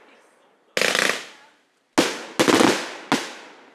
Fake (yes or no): no